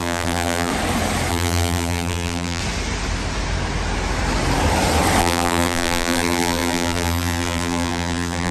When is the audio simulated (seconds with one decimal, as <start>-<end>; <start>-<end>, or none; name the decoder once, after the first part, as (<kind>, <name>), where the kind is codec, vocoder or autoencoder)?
0.0-0.7 (vocoder, BigVGAN v2); 1.3-2.6; 5.2-8.5

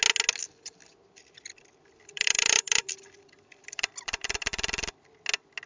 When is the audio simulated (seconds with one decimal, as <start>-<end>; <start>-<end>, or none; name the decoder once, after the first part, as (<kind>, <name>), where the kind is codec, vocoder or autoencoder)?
1.5-4.9 (vocoder, BigVGAN v2)

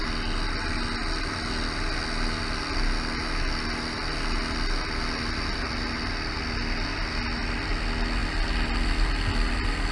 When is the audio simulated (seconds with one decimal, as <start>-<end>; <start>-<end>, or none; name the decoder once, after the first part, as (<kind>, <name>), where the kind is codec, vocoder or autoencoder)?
none

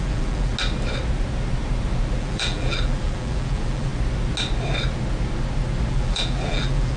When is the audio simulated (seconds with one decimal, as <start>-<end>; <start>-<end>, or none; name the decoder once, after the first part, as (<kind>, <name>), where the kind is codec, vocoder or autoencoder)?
0.0-0.5 (vocoder, BigVGAN v2); 2.2-3.9; 5.9-7.0

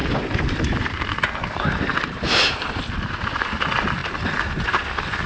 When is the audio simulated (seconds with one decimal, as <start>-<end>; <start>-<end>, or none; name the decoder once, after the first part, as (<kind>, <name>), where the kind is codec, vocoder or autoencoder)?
0.0-0.9 (vocoder, BigVGAN v2); 1.9-3.6

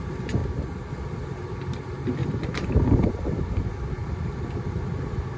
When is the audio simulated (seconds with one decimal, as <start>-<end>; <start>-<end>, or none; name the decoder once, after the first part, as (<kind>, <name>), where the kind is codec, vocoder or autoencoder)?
2.2-3.1 (vocoder, BigVGAN v2)

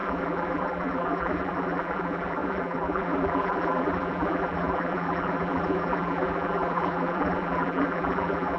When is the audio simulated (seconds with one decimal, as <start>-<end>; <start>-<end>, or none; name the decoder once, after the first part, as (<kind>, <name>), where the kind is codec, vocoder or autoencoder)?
0.0-8.6 (vocoder, BigVGAN v2)